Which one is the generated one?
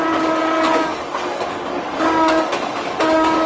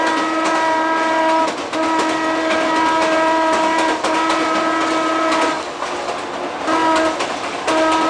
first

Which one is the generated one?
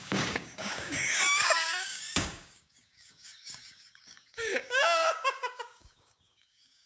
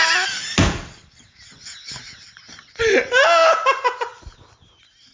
first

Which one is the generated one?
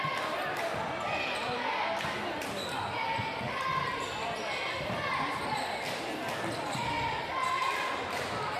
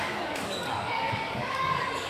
second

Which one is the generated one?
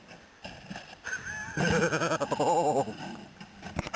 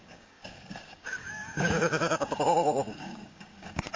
second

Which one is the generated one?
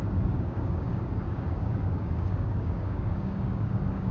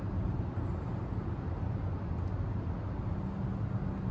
first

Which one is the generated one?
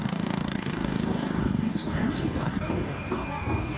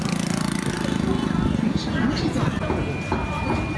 first